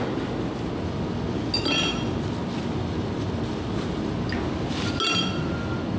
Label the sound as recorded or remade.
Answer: recorded